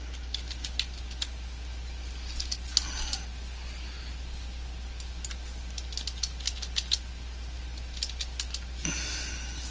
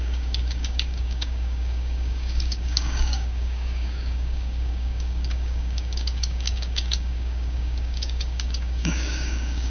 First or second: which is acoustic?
first